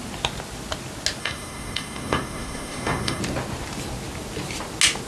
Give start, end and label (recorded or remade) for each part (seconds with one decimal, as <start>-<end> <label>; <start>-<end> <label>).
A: 0.0-1.2 recorded; 1.2-3.2 remade; 3.2-5.1 recorded